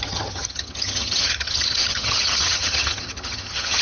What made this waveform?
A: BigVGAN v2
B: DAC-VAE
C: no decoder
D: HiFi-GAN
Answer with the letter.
D